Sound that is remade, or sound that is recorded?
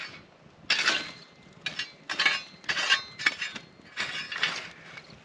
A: recorded